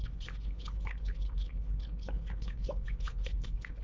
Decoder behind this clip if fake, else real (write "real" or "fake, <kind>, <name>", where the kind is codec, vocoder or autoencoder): fake, codec, HILCodec